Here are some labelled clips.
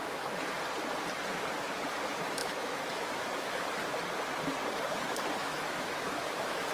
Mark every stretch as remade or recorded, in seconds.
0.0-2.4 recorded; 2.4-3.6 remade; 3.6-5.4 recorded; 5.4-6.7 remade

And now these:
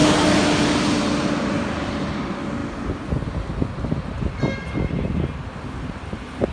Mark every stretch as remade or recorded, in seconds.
0.0-6.5 recorded

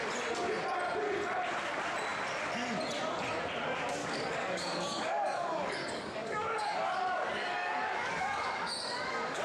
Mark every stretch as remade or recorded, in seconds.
0.0-4.0 recorded; 4.0-9.4 remade

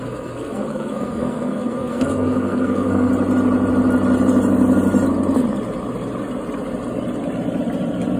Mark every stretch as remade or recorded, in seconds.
0.0-3.1 remade; 3.1-8.2 recorded